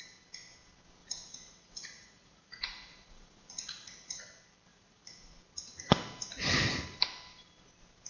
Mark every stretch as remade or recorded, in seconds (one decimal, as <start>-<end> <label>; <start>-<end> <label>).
0.0-1.0 recorded; 1.0-4.2 remade; 4.2-4.7 recorded; 4.7-5.4 remade; 5.4-8.1 recorded